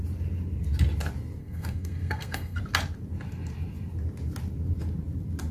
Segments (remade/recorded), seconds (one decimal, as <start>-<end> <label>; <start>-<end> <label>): 0.0-1.4 recorded; 1.4-2.6 remade; 2.6-5.5 recorded